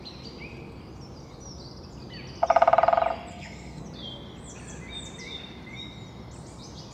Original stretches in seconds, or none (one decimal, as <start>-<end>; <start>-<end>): 0.0-3.3; 3.8-6.9